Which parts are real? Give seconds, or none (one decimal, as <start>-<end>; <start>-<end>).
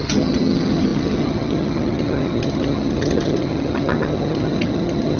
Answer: none